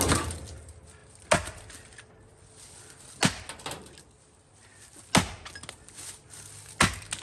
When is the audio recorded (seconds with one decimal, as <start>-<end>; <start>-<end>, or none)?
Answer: 0.0-7.2